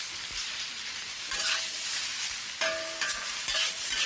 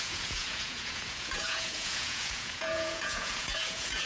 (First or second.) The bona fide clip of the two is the first